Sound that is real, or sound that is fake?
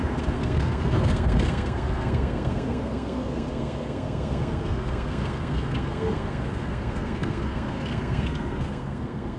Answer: fake